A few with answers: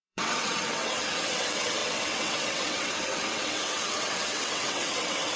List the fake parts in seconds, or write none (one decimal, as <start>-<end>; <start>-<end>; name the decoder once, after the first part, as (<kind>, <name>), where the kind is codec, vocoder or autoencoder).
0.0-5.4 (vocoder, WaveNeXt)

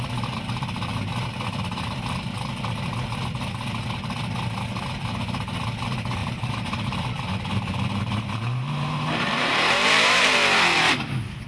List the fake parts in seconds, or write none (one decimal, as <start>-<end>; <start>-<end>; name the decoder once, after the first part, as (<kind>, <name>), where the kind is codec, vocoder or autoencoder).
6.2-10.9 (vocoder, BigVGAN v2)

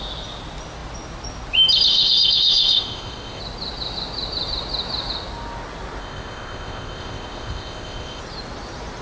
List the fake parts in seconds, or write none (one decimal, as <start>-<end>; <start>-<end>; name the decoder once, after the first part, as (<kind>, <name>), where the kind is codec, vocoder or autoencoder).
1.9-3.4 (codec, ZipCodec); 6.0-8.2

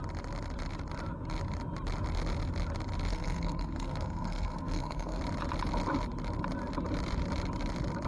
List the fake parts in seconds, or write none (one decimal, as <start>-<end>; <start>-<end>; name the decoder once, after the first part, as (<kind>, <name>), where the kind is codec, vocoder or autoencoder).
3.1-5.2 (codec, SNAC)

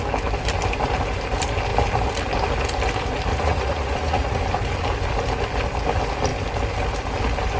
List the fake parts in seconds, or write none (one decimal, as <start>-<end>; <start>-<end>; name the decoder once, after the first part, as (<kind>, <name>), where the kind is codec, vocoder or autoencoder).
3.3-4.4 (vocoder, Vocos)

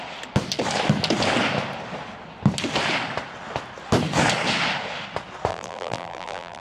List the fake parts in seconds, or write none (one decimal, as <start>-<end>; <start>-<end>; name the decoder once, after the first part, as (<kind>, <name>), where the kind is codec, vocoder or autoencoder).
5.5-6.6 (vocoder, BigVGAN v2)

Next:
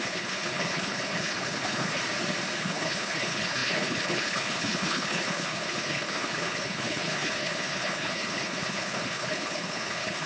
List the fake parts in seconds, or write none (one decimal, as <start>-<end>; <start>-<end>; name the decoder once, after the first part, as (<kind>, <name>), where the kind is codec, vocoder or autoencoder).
0.0-2.0 (codec, HILCodec); 2.6-10.3